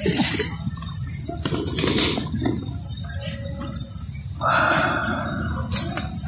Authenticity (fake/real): real